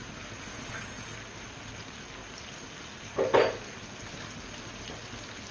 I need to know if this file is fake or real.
real